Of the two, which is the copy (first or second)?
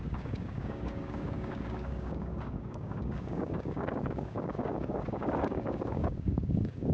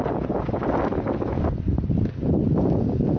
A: first